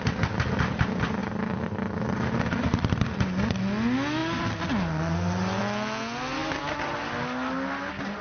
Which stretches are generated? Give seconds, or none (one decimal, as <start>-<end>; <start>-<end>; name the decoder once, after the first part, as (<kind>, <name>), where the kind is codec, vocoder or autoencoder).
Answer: none